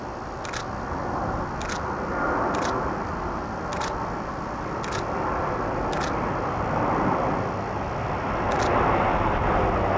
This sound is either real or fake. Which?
real